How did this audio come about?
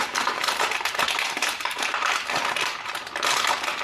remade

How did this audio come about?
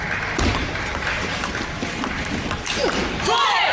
remade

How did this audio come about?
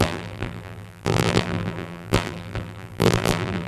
remade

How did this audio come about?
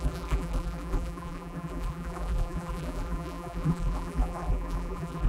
remade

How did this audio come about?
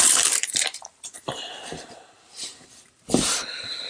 remade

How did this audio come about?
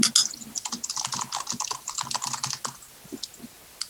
recorded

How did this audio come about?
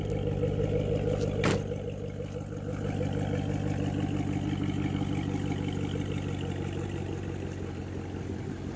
recorded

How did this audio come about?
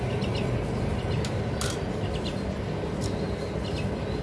recorded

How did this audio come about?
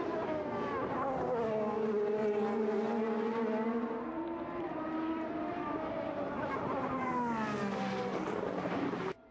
recorded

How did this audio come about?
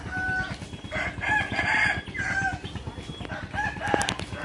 recorded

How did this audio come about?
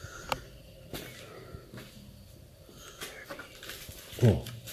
recorded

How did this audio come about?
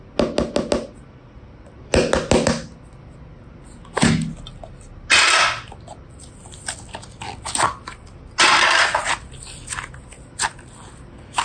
recorded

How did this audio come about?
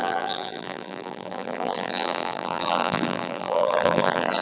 remade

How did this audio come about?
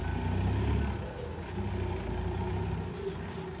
recorded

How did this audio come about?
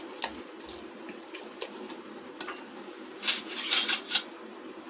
recorded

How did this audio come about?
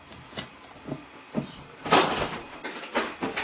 remade